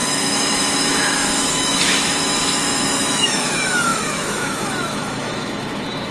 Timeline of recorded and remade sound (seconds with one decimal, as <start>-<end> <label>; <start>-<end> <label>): 0.0-6.1 remade